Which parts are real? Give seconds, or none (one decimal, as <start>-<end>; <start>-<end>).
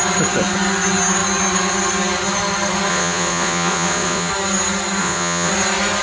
0.0-2.9; 4.3-5.0; 5.5-6.0